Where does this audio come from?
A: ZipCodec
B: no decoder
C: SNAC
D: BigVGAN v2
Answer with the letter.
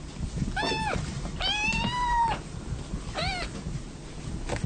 B